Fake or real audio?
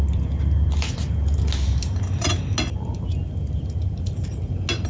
real